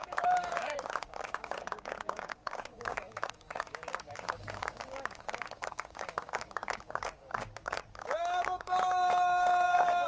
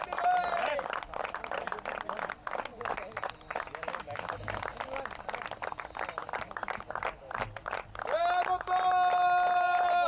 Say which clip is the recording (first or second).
second